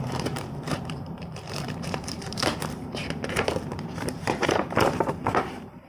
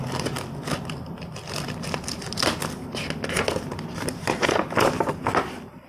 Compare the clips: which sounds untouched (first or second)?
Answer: second